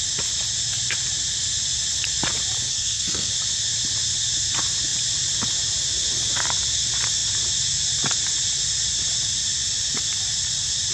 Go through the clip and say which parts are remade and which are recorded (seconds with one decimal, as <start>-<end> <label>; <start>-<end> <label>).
0.0-2.7 recorded; 2.7-3.3 remade; 3.3-10.9 recorded